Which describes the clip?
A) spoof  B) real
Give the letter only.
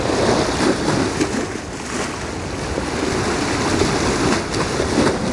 B